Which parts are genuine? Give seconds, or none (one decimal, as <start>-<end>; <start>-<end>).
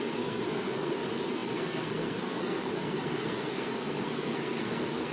none